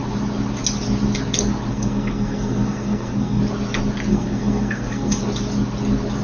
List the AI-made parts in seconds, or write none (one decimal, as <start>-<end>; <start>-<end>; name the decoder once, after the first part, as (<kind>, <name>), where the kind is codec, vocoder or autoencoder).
1.7-3.4 (codec, SNAC); 4.1-5.2